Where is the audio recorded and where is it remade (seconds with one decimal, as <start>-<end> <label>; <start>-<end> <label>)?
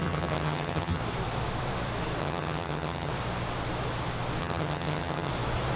0.0-1.0 remade; 1.0-2.2 recorded; 2.2-3.1 remade; 3.1-4.4 recorded; 4.4-5.3 remade; 5.3-5.8 recorded